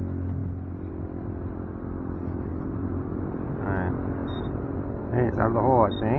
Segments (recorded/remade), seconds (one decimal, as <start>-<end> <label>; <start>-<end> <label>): 0.0-2.5 recorded; 2.5-3.6 remade; 3.6-4.2 recorded; 4.2-5.3 remade; 5.3-6.2 recorded